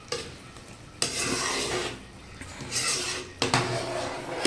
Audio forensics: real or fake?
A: real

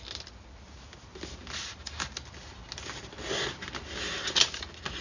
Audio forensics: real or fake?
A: real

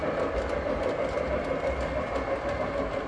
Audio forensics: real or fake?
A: real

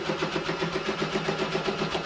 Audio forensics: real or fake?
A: real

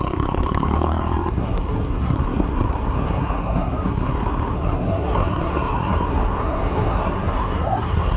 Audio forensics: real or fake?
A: fake